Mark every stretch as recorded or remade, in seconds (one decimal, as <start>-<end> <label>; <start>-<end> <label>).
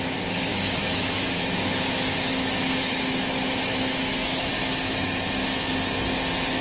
0.0-0.5 recorded; 0.5-4.5 remade; 4.5-6.6 recorded